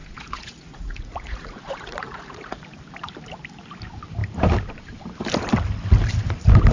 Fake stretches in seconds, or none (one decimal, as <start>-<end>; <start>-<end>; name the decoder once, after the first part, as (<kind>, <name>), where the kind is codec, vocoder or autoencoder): 0.0-2.6 (vocoder, Vocos)